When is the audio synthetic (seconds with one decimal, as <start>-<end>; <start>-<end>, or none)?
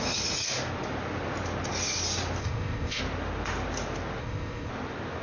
2.4-3.0; 4.2-4.7